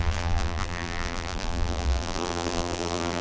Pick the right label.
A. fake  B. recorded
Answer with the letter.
A